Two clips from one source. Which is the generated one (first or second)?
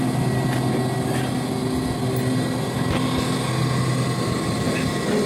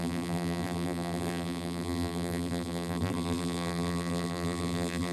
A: second